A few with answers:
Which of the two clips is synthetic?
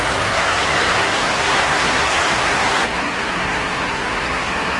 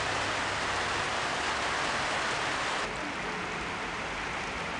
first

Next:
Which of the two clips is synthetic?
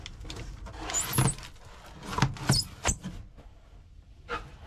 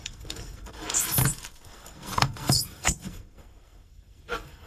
second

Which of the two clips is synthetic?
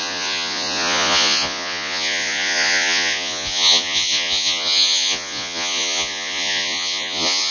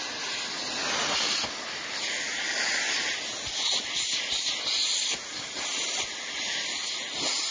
first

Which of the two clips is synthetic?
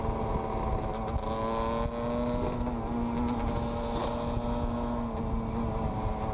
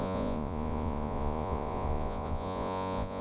second